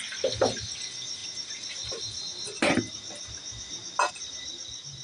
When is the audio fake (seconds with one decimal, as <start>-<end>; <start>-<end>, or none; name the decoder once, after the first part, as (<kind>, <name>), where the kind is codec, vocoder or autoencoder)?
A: none